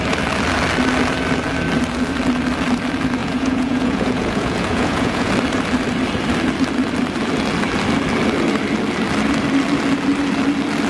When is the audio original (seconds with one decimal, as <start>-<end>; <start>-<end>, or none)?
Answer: 0.0-3.2; 5.3-10.9